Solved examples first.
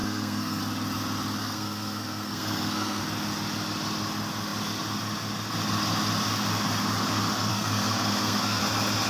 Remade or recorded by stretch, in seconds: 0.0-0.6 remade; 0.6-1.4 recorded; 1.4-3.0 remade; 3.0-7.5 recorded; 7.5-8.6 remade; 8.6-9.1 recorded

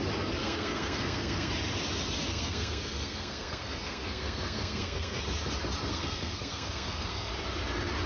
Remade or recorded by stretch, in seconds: 0.0-0.4 recorded; 0.4-1.5 remade; 1.5-2.3 recorded; 2.3-5.2 remade; 5.2-5.9 recorded; 5.9-7.3 remade; 7.3-8.1 recorded

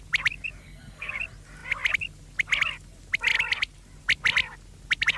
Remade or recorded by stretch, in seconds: 0.0-0.6 recorded; 0.6-1.1 remade; 1.1-5.2 recorded

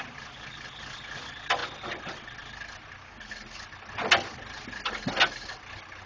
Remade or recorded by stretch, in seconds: 0.0-6.1 recorded

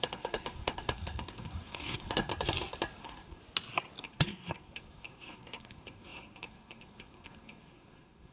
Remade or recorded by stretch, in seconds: 0.0-2.3 remade; 2.3-3.0 recorded; 3.0-3.4 remade; 3.4-4.0 recorded; 4.0-8.3 remade